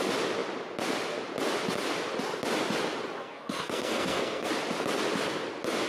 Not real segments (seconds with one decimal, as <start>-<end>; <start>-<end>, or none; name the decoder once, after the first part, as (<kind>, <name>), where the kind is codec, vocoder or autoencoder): 3.2-4.5 (codec, SNAC)